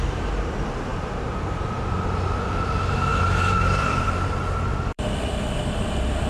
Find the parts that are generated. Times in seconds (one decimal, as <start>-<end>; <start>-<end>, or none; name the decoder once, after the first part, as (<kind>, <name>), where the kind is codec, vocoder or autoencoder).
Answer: 0.9-1.7 (vocoder, BigVGAN v2); 3.1-4.3; 4.7-5.2